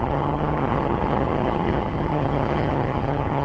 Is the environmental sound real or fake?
fake